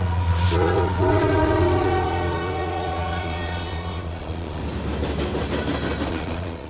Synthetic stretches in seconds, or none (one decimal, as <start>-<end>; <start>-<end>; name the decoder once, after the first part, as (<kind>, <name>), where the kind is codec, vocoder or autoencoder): 0.0-4.6 (vocoder, Vocos); 6.1-6.7